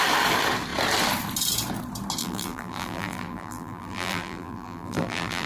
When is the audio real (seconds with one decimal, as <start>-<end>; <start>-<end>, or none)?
0.0-2.2